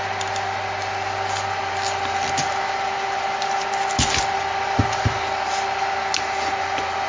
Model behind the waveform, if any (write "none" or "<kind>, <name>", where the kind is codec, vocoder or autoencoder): none